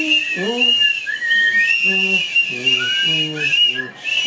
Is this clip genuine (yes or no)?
yes